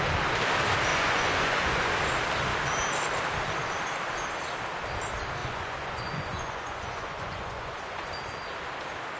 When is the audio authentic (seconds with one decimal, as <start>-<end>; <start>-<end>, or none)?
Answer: 0.0-0.9; 1.9-5.4; 8.1-9.2